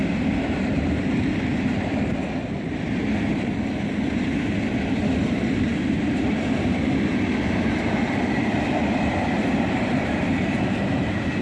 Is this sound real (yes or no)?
no